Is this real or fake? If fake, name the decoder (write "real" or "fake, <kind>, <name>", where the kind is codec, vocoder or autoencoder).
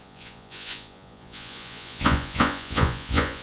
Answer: fake, vocoder, Vocos